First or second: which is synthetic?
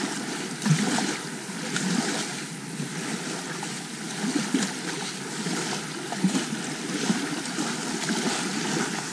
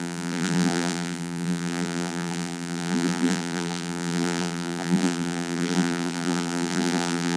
second